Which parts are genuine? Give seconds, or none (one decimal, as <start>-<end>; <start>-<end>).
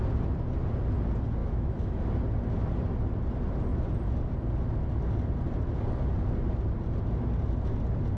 0.0-1.4; 2.0-8.2